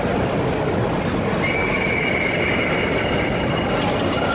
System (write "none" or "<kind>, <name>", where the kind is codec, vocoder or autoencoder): none